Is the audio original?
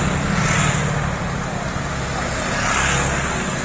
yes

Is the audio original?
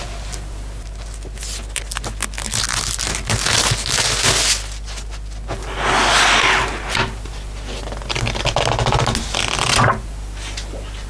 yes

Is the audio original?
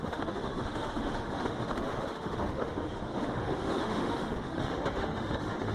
no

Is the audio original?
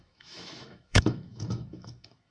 no